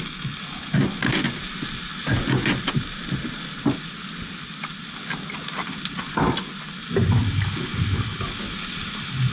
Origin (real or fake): real